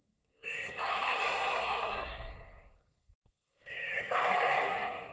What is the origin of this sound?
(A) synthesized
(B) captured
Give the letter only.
A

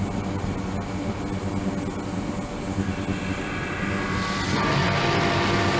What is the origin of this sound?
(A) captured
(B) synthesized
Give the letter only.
A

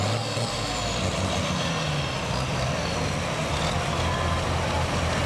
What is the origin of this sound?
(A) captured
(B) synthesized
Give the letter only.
A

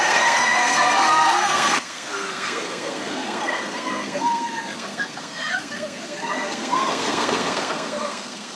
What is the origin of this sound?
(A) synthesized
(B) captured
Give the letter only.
A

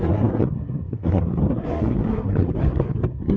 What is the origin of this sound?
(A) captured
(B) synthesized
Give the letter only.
B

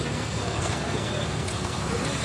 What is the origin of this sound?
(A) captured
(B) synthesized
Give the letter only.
B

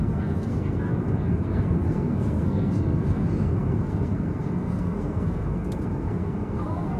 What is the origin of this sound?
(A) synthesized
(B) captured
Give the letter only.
A